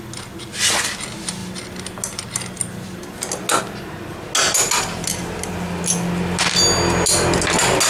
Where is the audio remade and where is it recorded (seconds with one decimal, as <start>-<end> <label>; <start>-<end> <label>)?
0.0-7.9 recorded